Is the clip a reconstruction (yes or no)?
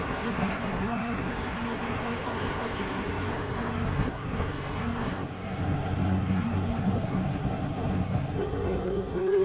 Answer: yes